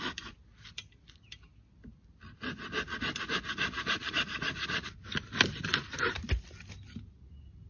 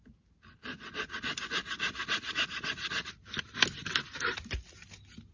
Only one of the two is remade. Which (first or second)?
first